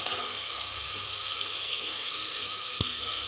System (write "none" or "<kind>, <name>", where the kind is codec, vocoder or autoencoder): codec, SNAC